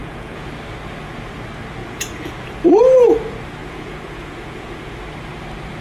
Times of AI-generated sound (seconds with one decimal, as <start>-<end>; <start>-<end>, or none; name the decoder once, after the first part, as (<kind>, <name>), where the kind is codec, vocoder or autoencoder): 0.0-0.5 (vocoder, Vocos); 1.8-2.3; 3.6-5.0